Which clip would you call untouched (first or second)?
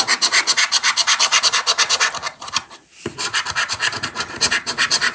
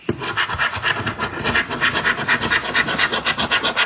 second